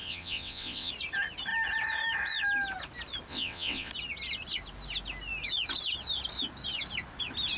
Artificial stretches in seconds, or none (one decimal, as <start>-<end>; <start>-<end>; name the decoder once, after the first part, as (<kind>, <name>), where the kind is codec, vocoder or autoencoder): 0.0-0.9 (vocoder, WaveNeXt); 3.3-3.9